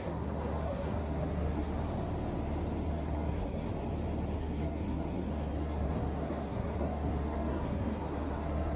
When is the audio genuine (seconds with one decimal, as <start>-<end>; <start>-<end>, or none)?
1.7-2.9; 3.7-4.4